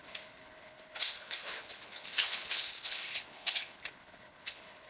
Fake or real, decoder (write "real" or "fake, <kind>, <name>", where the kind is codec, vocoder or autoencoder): fake, codec, HILCodec